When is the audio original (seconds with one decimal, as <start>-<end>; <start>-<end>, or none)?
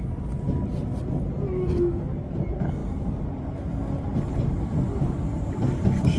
0.0-6.2